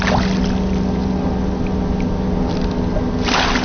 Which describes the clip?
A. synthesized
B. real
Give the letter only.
B